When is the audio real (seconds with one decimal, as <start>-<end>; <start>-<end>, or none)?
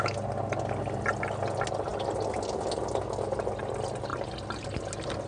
0.0-5.3